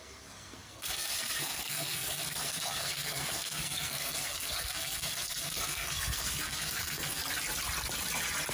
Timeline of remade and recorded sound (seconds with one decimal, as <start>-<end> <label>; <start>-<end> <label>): 0.0-7.2 remade; 7.2-8.5 recorded

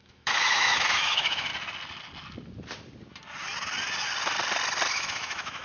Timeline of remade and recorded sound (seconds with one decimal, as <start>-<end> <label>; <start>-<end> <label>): 0.0-1.5 remade; 1.5-4.9 recorded; 4.9-5.6 remade

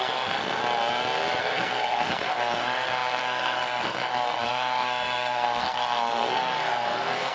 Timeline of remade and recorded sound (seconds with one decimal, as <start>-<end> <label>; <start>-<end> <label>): 0.0-0.6 remade; 0.6-1.4 recorded; 1.4-7.3 remade